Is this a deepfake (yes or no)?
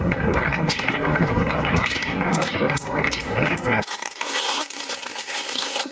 yes